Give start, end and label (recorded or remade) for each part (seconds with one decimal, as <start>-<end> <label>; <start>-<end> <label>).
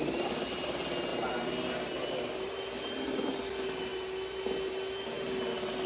0.0-5.9 recorded